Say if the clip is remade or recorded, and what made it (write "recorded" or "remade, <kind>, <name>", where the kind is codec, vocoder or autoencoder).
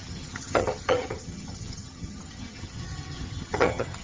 remade, vocoder, HiFi-GAN